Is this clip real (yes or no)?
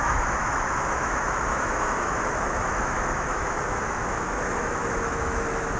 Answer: no